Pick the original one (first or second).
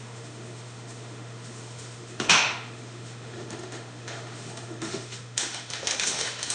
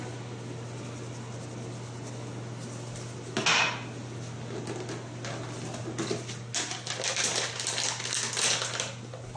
second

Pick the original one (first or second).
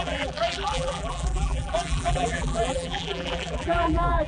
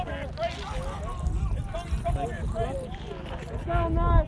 second